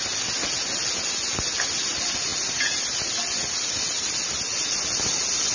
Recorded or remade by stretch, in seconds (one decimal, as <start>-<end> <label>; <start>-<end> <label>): 0.0-5.5 recorded